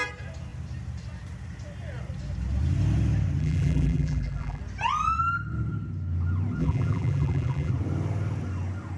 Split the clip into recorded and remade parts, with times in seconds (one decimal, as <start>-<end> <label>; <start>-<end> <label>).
0.0-3.4 recorded; 3.4-4.6 remade; 4.6-6.6 recorded; 6.6-7.7 remade; 7.7-9.0 recorded